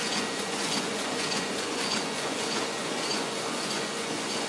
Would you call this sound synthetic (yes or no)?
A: yes